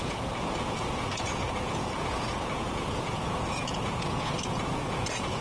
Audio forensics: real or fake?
fake